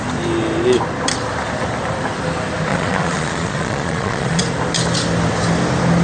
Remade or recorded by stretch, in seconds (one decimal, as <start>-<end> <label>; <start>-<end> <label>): 0.0-2.7 recorded; 2.7-4.4 remade; 4.4-6.0 recorded